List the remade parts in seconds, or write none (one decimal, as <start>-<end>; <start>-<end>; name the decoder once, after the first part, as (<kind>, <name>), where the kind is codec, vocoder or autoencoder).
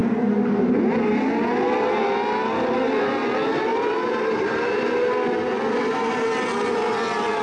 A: 0.0-0.8 (vocoder, BigVGAN v2); 3.7-4.9